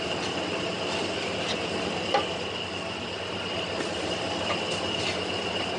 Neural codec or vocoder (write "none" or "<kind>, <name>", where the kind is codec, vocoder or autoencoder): none